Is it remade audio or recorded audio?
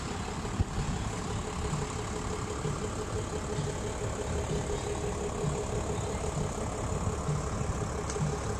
recorded